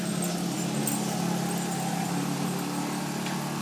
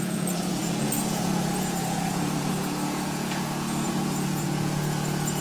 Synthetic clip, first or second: second